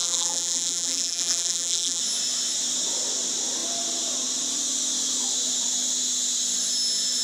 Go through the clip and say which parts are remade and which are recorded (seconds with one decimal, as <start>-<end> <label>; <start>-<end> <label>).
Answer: 0.0-2.0 remade; 2.0-7.2 recorded